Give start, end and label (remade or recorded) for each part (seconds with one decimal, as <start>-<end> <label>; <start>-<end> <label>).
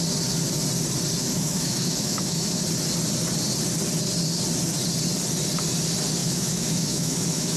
0.0-1.2 recorded; 1.2-2.6 remade; 2.6-6.2 recorded; 6.2-7.6 remade